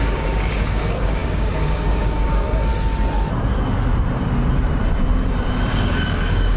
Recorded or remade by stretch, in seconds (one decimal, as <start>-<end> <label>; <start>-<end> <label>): 0.0-2.7 remade; 2.7-5.7 recorded; 5.7-6.6 remade